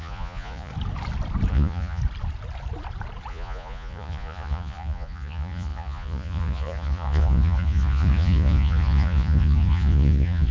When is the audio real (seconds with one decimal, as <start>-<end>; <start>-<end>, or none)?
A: 0.7-1.5; 2.0-3.3